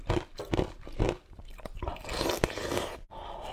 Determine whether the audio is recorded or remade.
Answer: recorded